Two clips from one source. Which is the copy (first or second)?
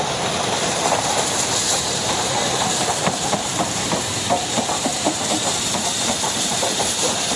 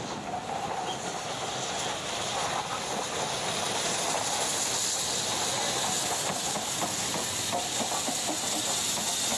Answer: first